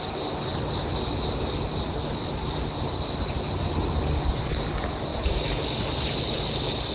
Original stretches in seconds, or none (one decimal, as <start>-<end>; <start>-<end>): 0.0-6.9